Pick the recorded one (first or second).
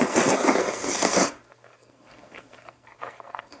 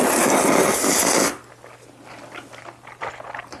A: second